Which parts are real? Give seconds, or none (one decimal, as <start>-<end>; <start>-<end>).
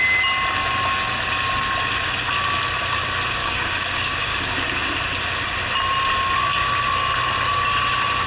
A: 0.0-3.4; 4.4-8.3